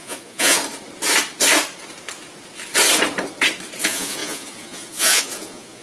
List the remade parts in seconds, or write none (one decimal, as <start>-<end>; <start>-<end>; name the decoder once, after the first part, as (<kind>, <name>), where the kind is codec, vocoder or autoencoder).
0.0-0.6 (vocoder, Vocos); 3.8-5.8